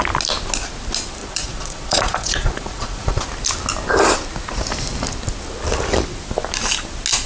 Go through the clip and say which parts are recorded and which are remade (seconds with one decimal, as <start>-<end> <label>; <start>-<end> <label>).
0.0-1.2 recorded; 1.2-3.2 remade; 3.2-7.3 recorded